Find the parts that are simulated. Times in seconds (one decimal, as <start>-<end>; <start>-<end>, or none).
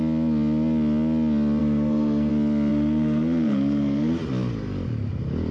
1.6-2.3; 2.7-4.2